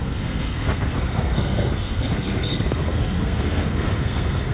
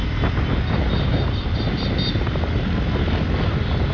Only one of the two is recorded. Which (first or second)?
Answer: second